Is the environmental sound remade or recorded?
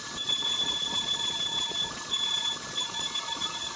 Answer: remade